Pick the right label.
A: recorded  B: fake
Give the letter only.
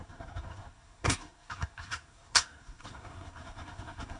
B